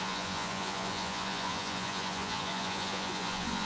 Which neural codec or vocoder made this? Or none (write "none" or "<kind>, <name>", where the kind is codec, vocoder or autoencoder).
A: vocoder, Vocos